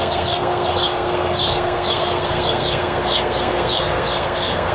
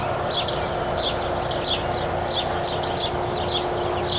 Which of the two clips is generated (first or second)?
first